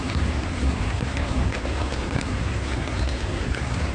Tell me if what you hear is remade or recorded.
remade